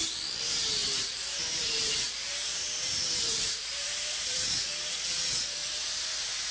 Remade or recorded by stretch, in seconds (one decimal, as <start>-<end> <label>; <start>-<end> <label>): 0.0-0.8 recorded; 0.8-4.7 remade; 4.7-5.6 recorded; 5.6-6.5 remade